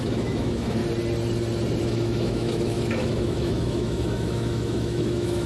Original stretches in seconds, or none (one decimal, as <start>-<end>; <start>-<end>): 0.8-1.8